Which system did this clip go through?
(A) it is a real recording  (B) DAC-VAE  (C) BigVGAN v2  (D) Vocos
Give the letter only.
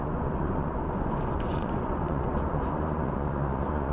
D